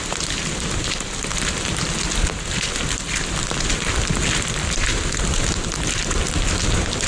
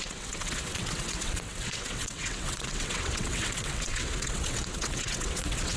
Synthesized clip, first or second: second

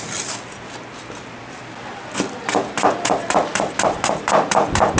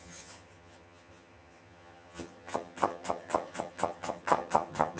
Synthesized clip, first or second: second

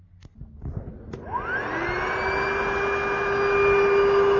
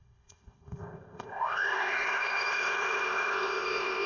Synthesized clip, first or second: second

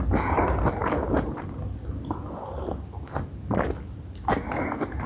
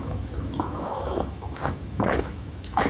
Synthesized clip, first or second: second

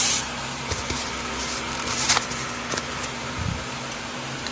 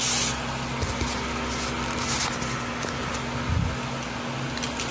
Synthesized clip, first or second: first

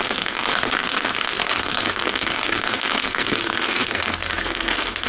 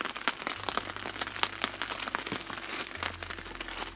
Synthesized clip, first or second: first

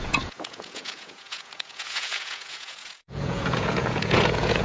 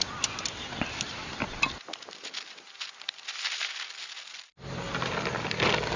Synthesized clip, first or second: first